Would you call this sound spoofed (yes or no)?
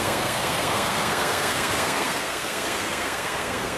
yes